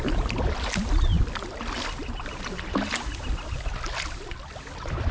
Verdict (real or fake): real